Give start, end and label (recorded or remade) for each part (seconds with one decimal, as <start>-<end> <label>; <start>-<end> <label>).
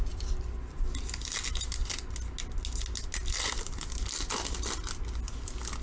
0.0-5.8 recorded